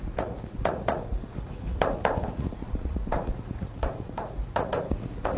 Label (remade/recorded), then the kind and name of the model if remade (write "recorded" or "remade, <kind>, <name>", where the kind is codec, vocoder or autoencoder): remade, vocoder, Vocos